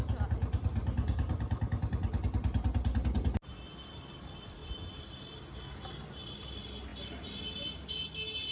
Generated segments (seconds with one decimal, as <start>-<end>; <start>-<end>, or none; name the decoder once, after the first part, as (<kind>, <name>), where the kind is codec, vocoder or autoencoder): none